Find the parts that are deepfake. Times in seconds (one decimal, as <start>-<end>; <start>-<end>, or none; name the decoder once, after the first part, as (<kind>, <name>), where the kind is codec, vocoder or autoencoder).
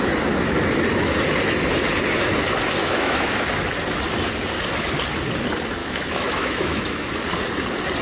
2.8-3.3 (autoencoder, DAC-VAE); 5.8-7.1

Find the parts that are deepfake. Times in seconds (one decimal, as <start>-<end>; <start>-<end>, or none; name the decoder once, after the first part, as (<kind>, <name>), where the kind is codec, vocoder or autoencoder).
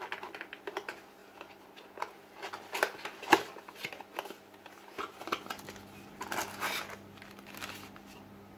none